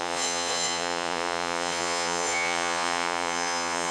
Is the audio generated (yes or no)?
yes